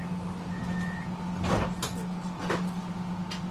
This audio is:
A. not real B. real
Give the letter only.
B